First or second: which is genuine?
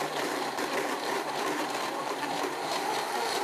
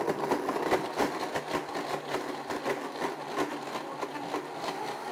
second